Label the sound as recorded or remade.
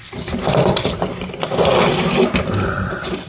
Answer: recorded